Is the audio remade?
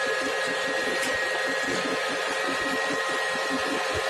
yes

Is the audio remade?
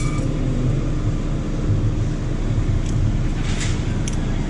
no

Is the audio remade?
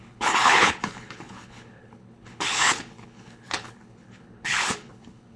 yes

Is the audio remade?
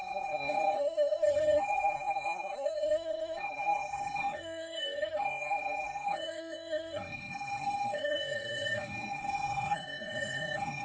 yes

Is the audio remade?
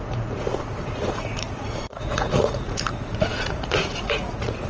yes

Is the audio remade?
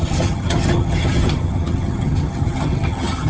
yes